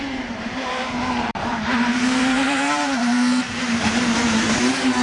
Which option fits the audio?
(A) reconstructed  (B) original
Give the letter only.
A